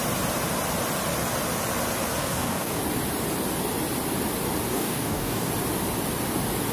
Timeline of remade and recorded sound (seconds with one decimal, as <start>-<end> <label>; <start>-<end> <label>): 0.0-2.2 recorded; 2.2-2.8 remade; 2.8-4.7 recorded; 4.7-5.5 remade; 5.5-6.7 recorded